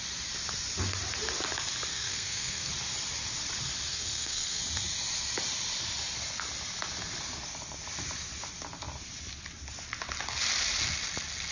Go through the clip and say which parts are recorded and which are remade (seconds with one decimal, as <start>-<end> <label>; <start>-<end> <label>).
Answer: 0.0-1.9 recorded; 1.9-2.7 remade; 2.7-3.9 recorded; 3.9-4.6 remade; 4.6-11.5 recorded